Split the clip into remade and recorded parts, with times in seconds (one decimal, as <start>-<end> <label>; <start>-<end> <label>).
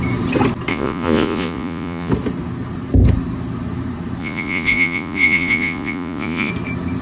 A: 0.0-0.7 recorded; 0.7-2.1 remade; 2.1-4.2 recorded; 4.2-6.5 remade; 6.5-7.0 recorded